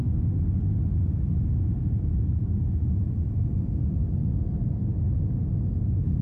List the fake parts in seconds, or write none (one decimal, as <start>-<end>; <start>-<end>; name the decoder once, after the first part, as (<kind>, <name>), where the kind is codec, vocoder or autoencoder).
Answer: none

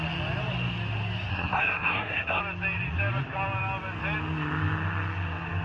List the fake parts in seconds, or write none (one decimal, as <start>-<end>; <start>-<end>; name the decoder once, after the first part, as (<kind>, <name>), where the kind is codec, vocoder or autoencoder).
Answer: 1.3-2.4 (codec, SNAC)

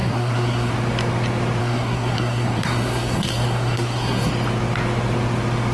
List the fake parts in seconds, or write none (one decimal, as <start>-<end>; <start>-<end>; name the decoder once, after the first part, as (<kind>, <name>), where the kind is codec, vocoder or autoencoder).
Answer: 0.0-0.7 (codec, SNAC); 1.6-4.3

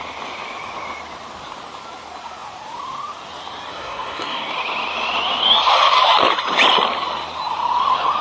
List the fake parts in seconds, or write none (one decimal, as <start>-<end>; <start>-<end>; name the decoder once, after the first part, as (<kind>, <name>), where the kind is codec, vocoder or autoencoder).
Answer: 3.7-4.5 (codec, SNAC)

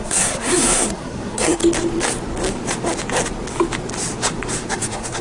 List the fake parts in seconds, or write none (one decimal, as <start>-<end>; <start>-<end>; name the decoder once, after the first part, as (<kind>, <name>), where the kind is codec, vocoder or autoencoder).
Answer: 0.0-1.6 (codec, SNAC); 4.7-5.2